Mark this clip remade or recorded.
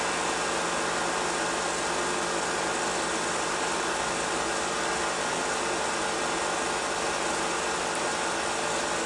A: recorded